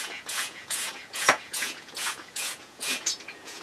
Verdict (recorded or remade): remade